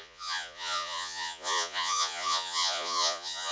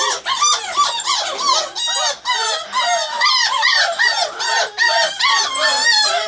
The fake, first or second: first